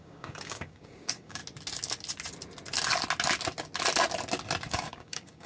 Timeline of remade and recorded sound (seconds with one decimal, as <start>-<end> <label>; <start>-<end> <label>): 0.0-1.4 remade; 1.4-4.7 recorded; 4.7-5.5 remade